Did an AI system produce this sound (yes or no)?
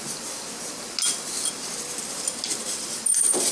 no